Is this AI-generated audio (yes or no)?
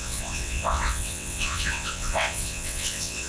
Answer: yes